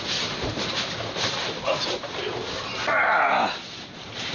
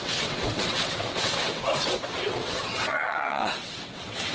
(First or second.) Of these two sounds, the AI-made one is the second